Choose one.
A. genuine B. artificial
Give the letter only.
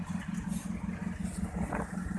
A